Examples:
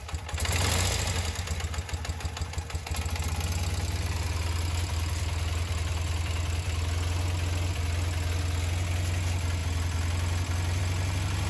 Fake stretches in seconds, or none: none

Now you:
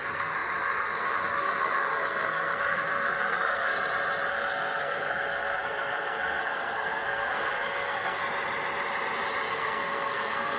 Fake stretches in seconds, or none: 0.0-3.7 (codec, SNAC); 4.3-8.2; 9.5-10.6